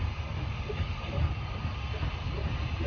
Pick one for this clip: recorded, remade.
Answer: recorded